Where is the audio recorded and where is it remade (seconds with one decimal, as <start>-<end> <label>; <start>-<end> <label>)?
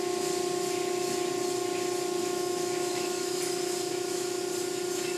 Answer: 0.0-2.2 recorded; 2.2-3.4 remade; 3.4-3.9 recorded; 3.9-4.4 remade; 4.4-5.2 recorded